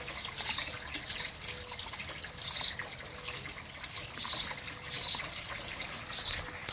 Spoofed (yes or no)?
no